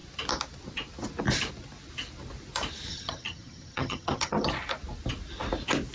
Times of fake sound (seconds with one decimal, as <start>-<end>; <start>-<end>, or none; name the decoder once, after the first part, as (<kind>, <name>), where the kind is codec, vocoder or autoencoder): 2.9-4.5 (vocoder, HiFi-GAN)